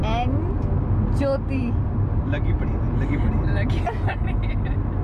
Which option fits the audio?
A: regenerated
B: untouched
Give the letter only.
B